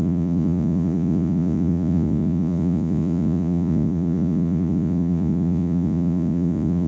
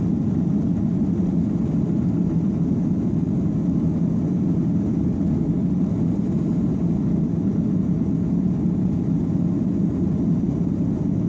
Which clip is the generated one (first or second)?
first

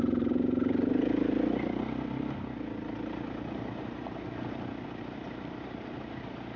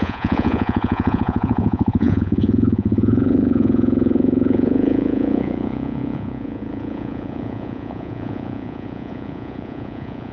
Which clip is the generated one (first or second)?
second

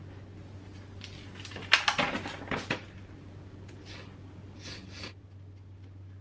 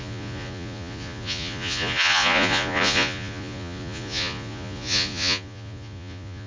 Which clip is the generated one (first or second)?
second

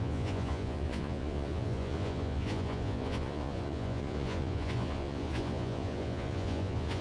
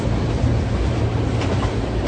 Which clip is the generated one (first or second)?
first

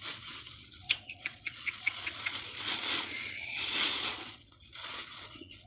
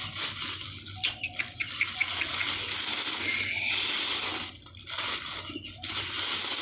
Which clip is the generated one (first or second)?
first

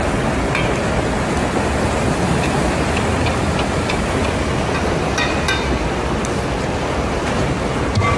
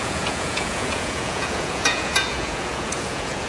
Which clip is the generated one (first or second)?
second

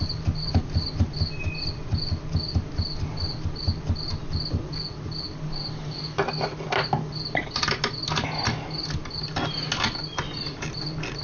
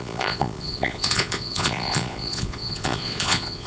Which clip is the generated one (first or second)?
second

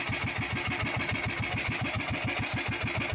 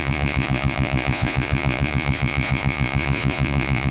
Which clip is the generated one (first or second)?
second